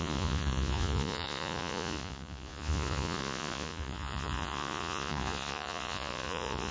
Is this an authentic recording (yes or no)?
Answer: no